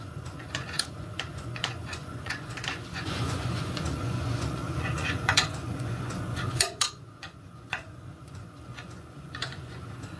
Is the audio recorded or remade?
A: remade